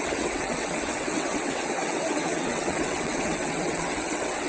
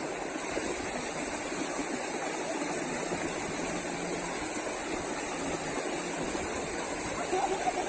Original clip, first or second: second